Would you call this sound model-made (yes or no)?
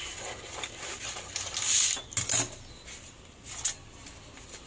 no